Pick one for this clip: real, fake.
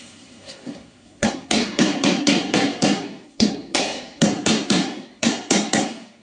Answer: fake